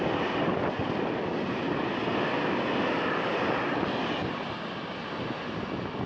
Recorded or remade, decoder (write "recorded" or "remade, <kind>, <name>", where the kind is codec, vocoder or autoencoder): recorded